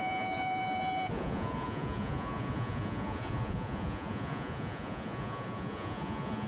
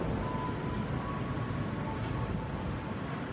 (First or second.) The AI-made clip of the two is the first